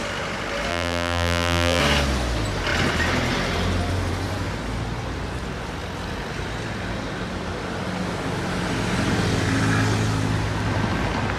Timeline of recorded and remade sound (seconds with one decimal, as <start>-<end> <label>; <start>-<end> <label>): 0.0-0.7 recorded; 0.7-1.8 remade; 1.8-11.4 recorded